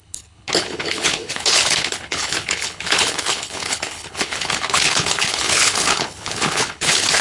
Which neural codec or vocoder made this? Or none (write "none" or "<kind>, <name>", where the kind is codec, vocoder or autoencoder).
codec, HILCodec